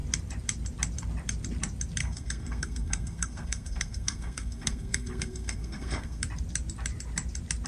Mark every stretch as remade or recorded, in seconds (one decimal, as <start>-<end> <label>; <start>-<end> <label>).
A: 0.0-2.0 recorded; 2.0-6.2 remade; 6.2-7.7 recorded